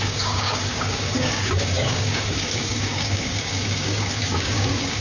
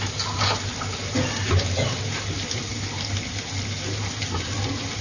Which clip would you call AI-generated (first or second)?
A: first